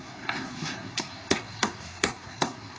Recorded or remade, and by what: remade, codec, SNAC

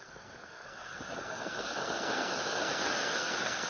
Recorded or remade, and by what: remade, codec, SNAC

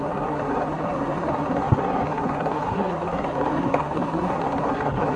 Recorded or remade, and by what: remade, codec, SNAC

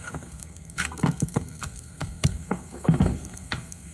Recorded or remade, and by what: remade, codec, SNAC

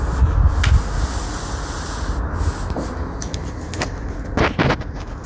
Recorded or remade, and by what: recorded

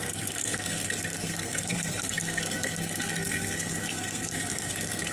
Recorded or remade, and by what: remade, codec, SNAC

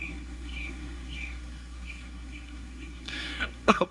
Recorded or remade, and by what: remade, codec, SNAC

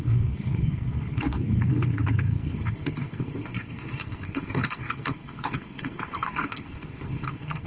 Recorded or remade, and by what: remade, codec, SNAC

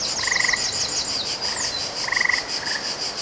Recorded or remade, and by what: recorded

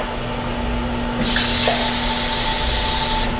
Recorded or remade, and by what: recorded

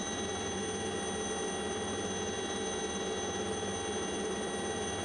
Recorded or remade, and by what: recorded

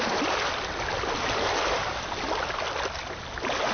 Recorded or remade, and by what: recorded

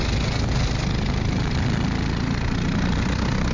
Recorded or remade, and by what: recorded